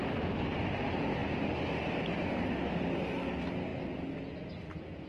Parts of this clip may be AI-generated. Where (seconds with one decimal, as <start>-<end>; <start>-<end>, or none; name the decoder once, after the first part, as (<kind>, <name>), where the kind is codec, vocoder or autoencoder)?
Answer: none